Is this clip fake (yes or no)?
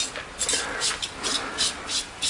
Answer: no